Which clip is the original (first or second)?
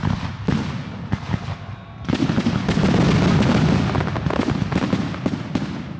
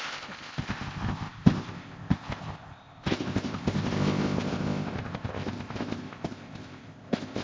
first